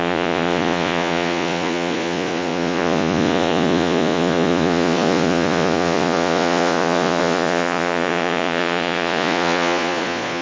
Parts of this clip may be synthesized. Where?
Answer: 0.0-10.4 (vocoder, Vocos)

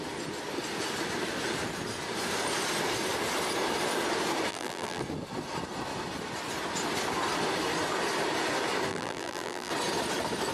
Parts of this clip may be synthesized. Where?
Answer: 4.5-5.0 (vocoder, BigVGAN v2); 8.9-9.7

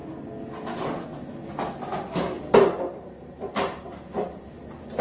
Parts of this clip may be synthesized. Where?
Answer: 1.9-5.0 (vocoder, BigVGAN v2)

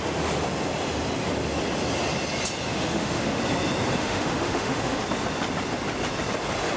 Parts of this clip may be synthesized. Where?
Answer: 2.7-3.4 (autoencoder, DAC-VAE); 4.0-5.0

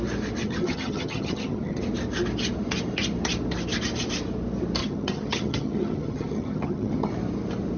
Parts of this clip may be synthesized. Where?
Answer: 0.4-1.8 (vocoder, HiFi-GAN); 4.8-7.1